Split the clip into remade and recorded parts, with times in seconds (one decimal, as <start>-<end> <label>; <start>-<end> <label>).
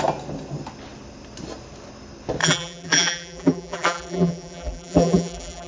0.0-2.4 recorded; 2.4-5.7 remade